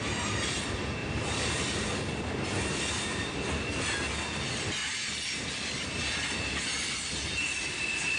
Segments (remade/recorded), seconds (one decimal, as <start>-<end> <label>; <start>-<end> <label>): 0.0-1.0 recorded; 1.0-2.0 remade; 2.0-8.2 recorded